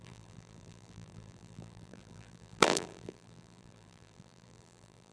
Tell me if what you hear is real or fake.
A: fake